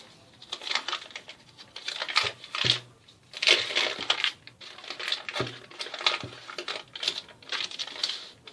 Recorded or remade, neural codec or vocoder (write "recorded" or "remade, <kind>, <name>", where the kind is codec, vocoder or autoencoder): recorded